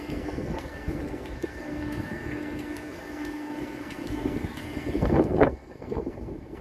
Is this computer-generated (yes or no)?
yes